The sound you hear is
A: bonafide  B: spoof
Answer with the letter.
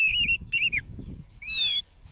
B